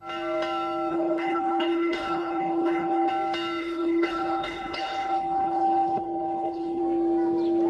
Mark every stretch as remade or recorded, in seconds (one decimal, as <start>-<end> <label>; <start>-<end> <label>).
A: 0.0-0.9 recorded; 0.9-3.1 remade; 3.1-3.6 recorded; 3.6-6.8 remade; 6.8-7.7 recorded